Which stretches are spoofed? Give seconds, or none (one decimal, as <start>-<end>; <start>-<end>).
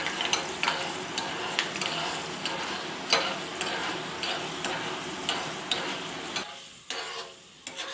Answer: none